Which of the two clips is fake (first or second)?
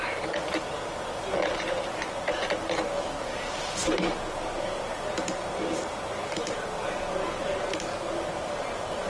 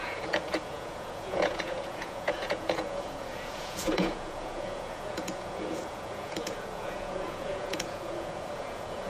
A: second